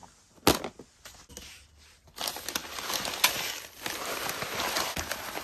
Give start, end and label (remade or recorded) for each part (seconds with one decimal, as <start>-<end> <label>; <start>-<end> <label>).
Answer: 0.0-5.4 recorded